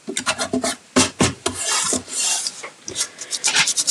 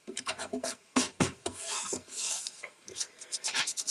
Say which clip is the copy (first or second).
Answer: second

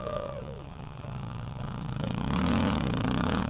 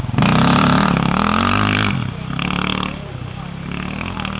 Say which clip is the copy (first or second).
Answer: first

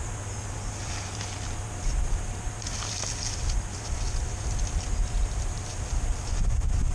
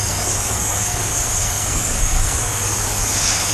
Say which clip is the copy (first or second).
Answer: second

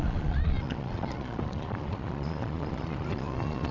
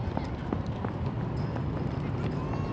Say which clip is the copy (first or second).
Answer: first